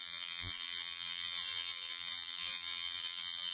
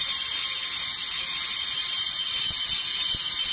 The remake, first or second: first